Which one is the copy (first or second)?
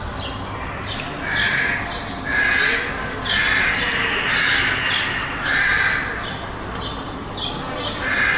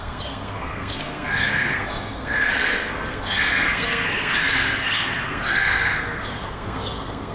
second